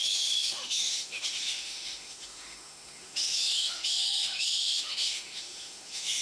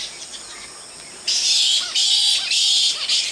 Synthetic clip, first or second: first